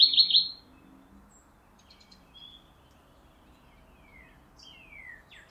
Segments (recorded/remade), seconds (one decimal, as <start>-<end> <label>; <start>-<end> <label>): 0.0-5.5 recorded